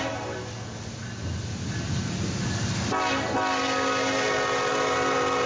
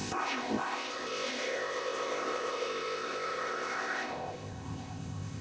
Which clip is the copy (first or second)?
second